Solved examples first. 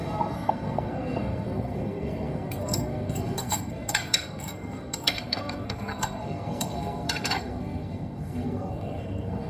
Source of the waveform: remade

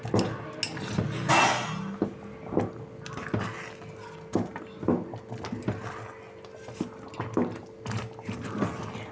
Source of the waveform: recorded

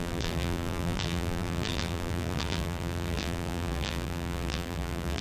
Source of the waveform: remade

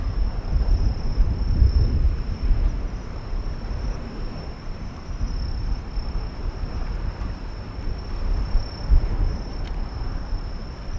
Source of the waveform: remade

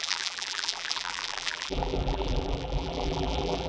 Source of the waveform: remade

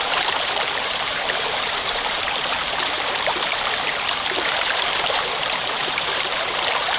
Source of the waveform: remade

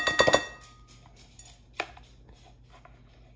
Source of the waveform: recorded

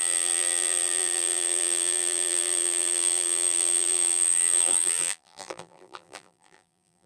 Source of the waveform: remade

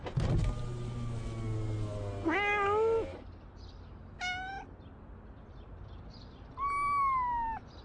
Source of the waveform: recorded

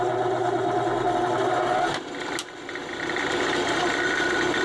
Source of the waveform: recorded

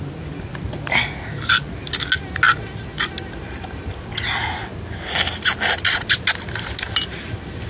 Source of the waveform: recorded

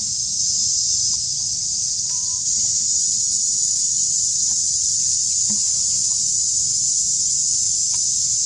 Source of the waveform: recorded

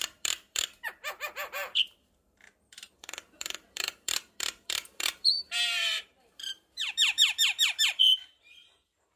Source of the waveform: remade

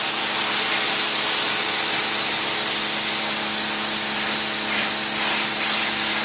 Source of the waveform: recorded